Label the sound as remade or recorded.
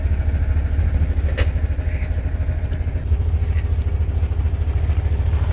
recorded